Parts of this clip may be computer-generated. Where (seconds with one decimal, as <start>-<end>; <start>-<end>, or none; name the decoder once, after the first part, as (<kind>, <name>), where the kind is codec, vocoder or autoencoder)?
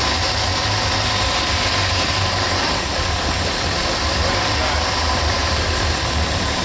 0.0-0.5 (vocoder, BigVGAN v2); 1.2-6.6